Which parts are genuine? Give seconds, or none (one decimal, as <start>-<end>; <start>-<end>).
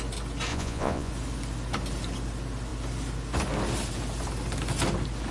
0.0-0.5; 1.1-5.3